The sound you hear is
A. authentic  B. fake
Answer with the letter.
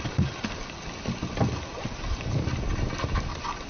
A